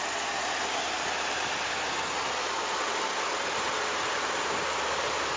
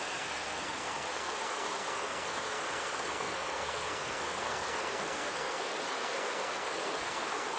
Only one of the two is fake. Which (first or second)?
second